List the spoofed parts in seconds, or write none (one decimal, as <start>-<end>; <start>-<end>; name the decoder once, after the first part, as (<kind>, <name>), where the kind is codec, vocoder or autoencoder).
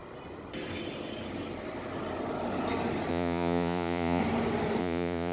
3.1-4.2 (vocoder, Vocos); 4.8-5.3